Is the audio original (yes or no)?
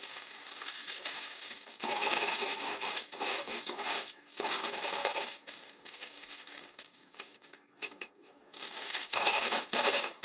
no